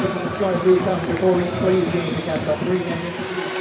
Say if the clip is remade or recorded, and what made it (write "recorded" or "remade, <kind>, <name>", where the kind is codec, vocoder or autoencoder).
remade, vocoder, BigVGAN v2